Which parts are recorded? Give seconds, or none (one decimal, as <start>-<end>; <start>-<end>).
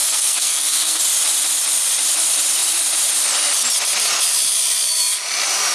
1.0-5.7